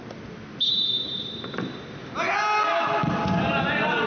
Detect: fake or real real